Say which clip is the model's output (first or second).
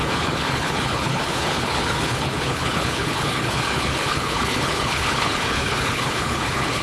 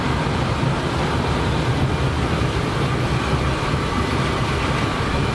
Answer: first